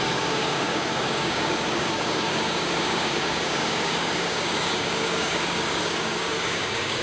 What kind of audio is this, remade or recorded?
remade